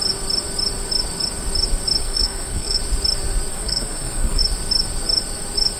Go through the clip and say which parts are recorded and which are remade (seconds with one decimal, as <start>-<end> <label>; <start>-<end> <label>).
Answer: 0.0-2.0 recorded; 2.0-2.8 remade; 2.8-3.5 recorded; 3.5-4.4 remade; 4.4-5.8 recorded